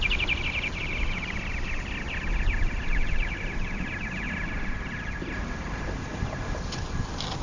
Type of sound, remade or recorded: recorded